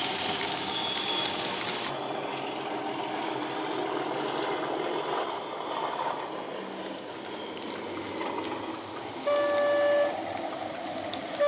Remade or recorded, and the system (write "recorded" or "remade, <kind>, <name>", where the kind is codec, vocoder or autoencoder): recorded